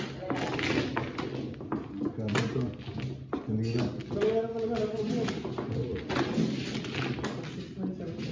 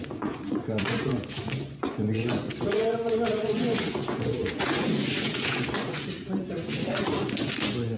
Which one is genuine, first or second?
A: first